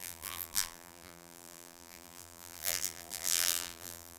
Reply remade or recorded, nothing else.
remade